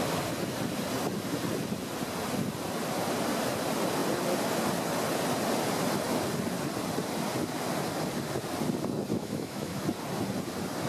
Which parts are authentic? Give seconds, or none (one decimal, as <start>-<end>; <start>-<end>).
0.0-9.1; 9.8-10.9